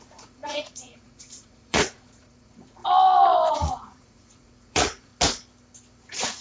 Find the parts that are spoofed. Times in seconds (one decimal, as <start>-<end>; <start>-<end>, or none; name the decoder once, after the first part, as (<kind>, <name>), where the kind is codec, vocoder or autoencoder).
0.0-2.8 (vocoder, Vocos); 3.5-5.1; 6.0-6.4

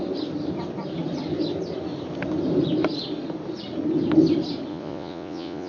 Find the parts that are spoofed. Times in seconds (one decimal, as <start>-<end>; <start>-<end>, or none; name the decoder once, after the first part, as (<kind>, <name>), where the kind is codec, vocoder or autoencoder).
4.7-5.7 (vocoder, Vocos)

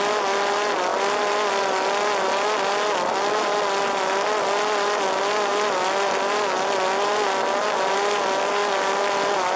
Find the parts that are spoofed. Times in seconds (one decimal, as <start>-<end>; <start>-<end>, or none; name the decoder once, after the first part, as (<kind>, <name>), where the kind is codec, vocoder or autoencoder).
none

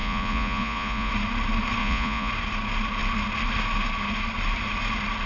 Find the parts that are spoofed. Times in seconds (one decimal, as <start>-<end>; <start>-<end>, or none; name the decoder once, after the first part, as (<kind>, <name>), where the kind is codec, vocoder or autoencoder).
0.0-1.1 (vocoder, Vocos); 1.8-2.3

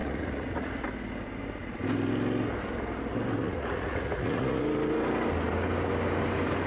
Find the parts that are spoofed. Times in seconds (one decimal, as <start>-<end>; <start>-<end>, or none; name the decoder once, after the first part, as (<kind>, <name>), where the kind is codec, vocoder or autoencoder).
0.0-0.8 (vocoder, Vocos); 3.4-4.6

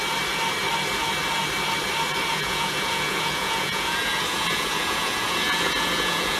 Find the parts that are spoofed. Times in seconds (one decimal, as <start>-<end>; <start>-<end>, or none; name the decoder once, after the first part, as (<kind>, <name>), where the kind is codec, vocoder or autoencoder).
2.3-6.4 (vocoder, Vocos)